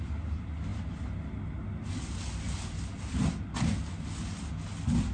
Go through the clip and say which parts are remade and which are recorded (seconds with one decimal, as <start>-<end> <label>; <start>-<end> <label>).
0.0-5.1 recorded